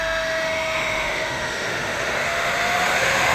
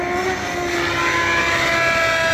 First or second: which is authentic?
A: second